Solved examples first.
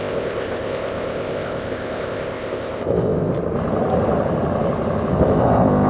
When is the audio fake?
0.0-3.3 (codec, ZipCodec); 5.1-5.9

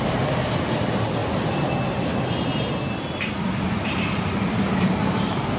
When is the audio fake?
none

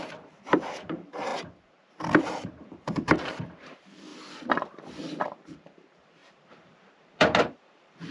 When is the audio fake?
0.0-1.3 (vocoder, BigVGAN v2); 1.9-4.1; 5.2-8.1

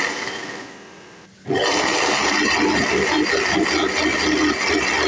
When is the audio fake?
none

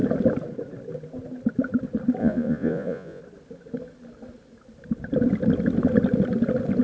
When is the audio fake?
2.2-3.2 (vocoder, Vocos)

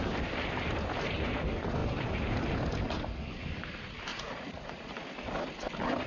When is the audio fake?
4.1-5.0 (vocoder, Vocos)